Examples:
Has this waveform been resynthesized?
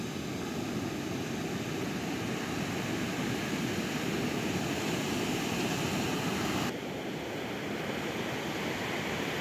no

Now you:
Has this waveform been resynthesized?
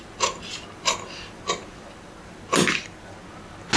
no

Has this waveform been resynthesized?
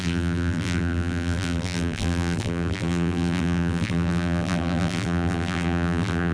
yes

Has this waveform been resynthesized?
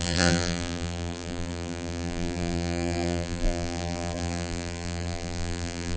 yes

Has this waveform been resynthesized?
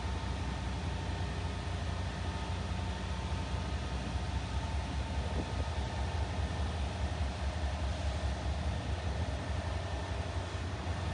no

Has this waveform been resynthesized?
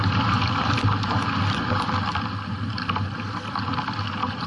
no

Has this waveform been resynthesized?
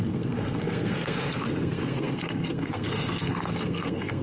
yes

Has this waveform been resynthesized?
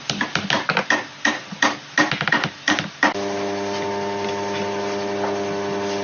no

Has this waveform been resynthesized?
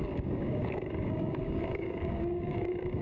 yes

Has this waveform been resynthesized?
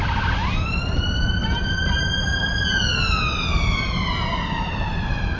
no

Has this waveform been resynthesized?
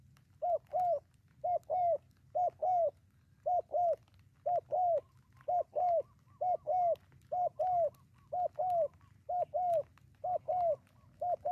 no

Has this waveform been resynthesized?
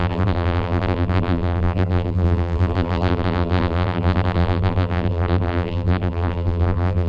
yes